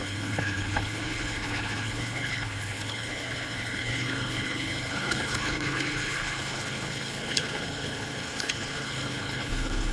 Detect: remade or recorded remade